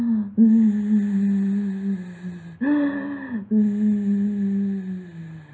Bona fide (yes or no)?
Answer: yes